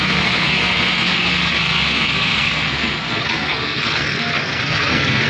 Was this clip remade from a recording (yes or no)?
yes